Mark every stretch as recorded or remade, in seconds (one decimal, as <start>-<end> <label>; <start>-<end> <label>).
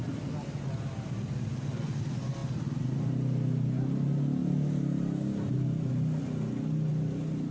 0.0-7.5 recorded